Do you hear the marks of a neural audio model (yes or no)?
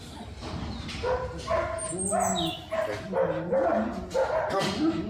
no